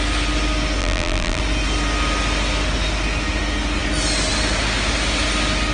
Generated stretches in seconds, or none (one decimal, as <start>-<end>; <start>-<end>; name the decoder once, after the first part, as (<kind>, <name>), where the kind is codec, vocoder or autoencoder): 0.8-1.4 (vocoder, BigVGAN v2)